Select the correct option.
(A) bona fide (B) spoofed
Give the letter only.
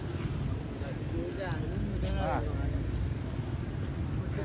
A